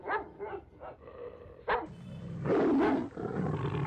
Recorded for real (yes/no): yes